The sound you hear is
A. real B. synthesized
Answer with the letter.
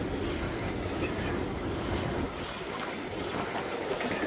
A